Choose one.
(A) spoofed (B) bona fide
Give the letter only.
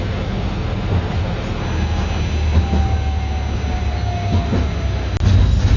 B